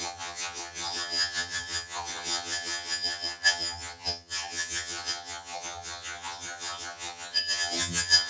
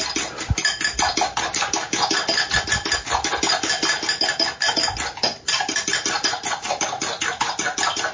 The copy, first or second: first